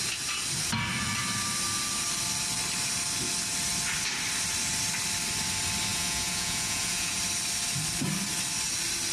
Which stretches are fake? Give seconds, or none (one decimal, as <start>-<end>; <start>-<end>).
5.9-7.2